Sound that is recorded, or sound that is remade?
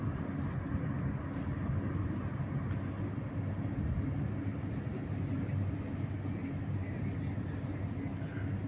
recorded